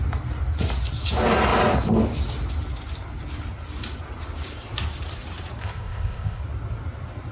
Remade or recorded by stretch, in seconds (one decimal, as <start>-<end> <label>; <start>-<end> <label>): 0.0-5.6 recorded; 5.6-6.4 remade; 6.4-7.3 recorded

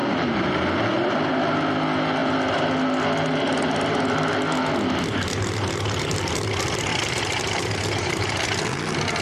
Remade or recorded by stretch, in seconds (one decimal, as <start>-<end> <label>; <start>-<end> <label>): 0.0-0.8 remade; 0.8-6.9 recorded; 6.9-8.4 remade; 8.4-9.2 recorded

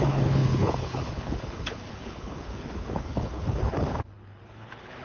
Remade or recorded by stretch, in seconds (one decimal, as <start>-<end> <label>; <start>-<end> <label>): 0.0-5.0 remade

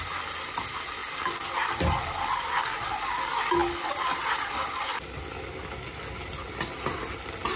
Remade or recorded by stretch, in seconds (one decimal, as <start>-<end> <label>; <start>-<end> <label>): 0.0-7.6 recorded

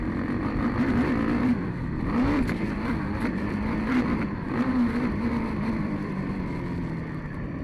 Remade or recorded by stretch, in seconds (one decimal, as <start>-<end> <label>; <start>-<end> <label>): 0.0-1.5 recorded; 1.5-6.1 remade; 6.1-7.6 recorded

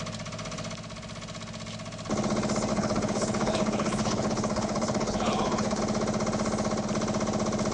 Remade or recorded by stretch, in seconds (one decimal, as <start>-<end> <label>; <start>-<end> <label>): 0.0-2.7 recorded; 2.7-5.8 remade; 5.8-7.7 recorded

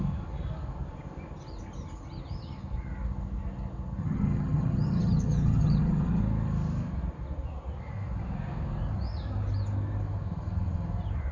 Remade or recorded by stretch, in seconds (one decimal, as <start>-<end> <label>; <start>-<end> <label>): 0.0-4.0 recorded; 4.0-6.2 remade; 6.2-11.3 recorded